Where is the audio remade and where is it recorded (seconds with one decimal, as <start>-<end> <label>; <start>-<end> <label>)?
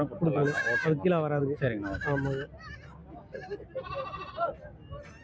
0.0-5.2 recorded